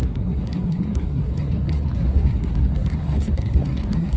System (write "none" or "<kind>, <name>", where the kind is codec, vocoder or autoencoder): codec, SNAC